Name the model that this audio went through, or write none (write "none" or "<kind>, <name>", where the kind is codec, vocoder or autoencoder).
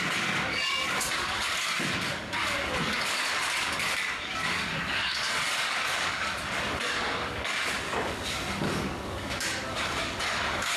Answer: codec, DAC